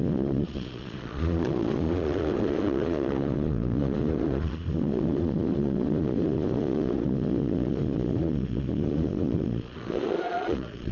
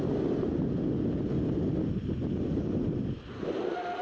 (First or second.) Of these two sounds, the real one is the second